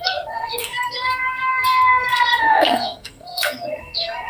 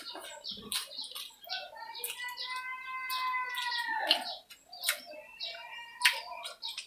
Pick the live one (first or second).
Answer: second